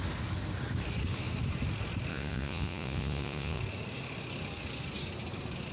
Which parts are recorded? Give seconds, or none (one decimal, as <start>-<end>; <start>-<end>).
0.0-2.1; 3.6-5.7